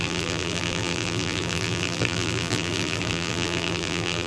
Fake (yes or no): yes